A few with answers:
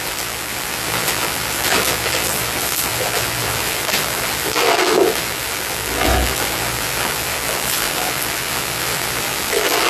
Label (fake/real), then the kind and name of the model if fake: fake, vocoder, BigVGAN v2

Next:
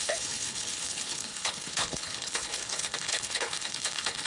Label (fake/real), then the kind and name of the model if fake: fake, codec, HILCodec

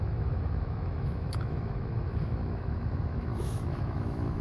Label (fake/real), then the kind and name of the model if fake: fake, autoencoder, DAC-VAE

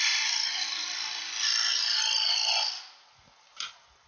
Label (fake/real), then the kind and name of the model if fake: real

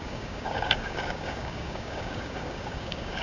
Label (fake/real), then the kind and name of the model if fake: fake, codec, DAC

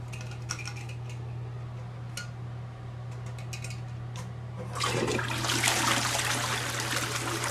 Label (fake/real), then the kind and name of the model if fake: real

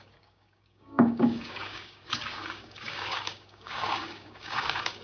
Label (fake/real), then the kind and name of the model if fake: fake, codec, DAC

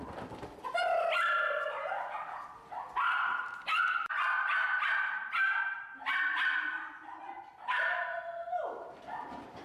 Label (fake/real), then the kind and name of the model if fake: real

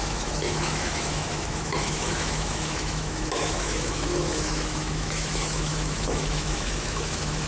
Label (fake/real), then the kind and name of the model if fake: fake, autoencoder, DAC-VAE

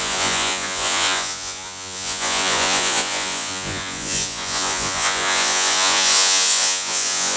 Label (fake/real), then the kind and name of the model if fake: fake, vocoder, Vocos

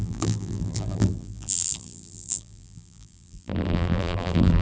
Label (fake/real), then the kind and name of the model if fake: fake, vocoder, BigVGAN v2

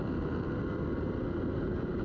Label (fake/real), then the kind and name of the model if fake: real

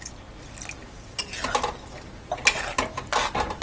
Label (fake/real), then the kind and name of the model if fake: real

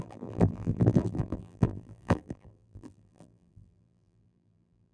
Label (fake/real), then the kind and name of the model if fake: fake, vocoder, BigVGAN v2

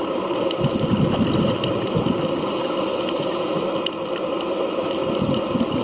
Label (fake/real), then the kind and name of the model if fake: real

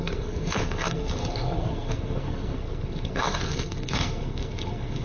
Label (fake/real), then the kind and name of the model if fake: fake, codec, SNAC